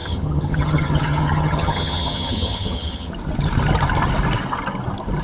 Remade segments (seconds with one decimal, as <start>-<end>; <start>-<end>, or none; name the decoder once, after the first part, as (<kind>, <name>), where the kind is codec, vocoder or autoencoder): 0.0-3.1 (vocoder, HiFi-GAN)